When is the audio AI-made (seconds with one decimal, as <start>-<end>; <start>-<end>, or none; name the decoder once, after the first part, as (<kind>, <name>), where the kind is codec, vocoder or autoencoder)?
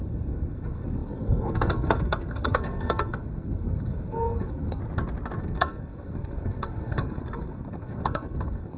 0.0-4.8 (codec, SNAC); 5.4-8.8